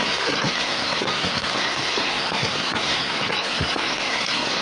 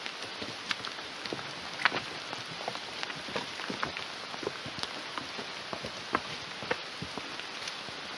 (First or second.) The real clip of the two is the second